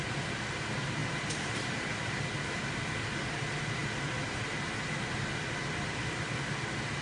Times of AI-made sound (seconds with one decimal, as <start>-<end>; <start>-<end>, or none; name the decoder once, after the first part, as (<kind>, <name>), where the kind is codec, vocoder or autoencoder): 1.0-2.2 (vocoder, BigVGAN v2)